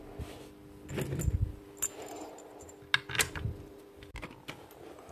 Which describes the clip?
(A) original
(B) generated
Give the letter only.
A